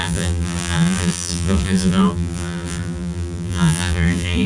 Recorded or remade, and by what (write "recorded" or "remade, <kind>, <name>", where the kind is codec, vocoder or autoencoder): remade, vocoder, BigVGAN v2